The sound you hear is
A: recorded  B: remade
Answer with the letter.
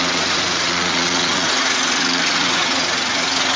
B